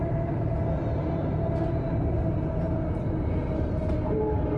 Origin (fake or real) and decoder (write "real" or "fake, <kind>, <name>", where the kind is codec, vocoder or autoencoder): real